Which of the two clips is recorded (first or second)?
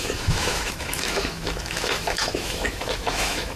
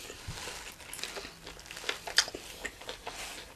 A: second